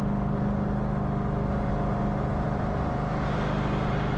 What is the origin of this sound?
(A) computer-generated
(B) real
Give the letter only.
B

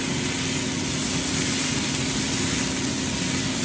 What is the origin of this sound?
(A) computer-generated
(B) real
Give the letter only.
B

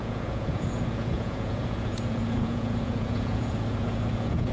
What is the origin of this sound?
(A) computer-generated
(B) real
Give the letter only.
A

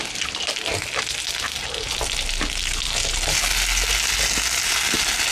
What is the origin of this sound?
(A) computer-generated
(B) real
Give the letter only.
B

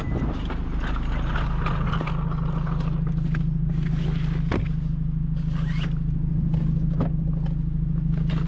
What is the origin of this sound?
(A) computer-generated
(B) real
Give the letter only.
B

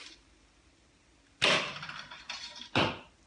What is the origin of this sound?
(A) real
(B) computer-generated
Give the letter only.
A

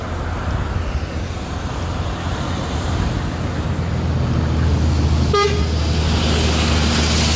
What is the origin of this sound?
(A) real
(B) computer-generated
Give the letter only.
A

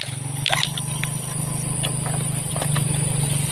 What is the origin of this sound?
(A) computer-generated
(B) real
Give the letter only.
B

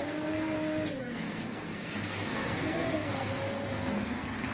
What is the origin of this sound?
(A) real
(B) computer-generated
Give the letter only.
B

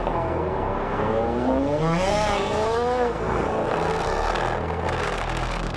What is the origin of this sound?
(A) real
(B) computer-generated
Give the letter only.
B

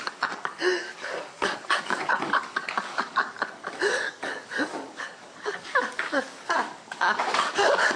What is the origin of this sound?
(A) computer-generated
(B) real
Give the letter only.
A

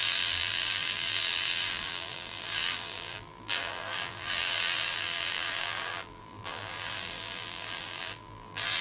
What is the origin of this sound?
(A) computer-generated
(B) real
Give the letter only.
A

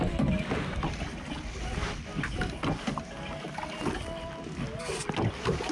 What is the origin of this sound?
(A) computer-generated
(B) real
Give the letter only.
B